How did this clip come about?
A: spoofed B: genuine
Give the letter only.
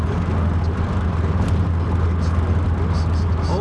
B